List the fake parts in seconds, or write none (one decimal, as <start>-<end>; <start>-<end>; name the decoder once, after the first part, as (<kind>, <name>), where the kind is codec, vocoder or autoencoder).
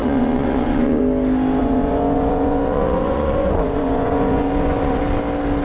0.0-1.0 (vocoder, Vocos); 1.6-5.0